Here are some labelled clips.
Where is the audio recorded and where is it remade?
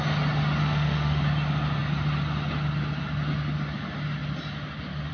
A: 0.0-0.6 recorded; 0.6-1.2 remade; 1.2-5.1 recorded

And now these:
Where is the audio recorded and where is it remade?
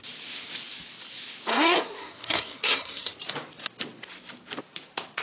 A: 0.0-1.5 recorded; 1.5-3.1 remade; 3.1-5.2 recorded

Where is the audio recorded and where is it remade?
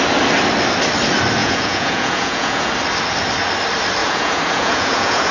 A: 0.0-1.4 recorded; 1.4-2.7 remade; 2.7-4.0 recorded; 4.0-5.3 remade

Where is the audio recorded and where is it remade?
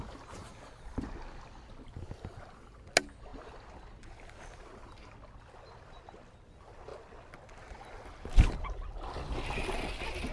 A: 0.0-10.3 recorded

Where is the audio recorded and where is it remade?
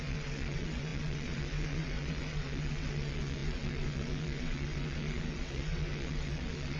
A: 0.0-6.8 remade